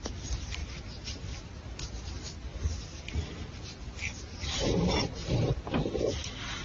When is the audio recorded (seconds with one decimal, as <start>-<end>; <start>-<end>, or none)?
0.0-0.6; 1.4-5.2; 6.0-6.6